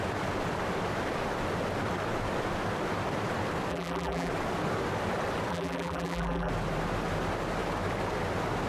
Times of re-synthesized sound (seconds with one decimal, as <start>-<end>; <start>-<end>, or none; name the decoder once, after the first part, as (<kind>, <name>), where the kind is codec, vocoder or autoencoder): 3.7-4.3 (vocoder, BigVGAN v2); 5.5-6.5